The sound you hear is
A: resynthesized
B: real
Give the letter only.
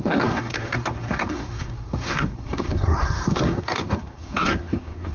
A